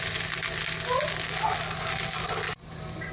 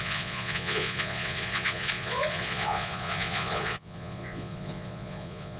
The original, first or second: first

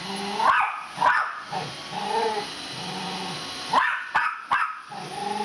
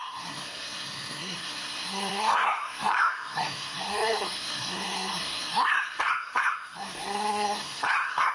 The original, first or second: first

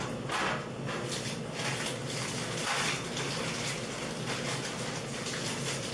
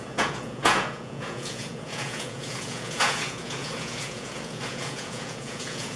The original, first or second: first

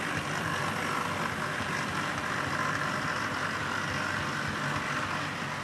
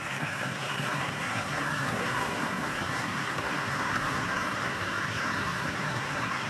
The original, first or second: first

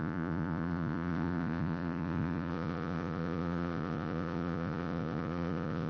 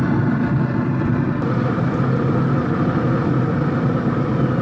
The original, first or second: second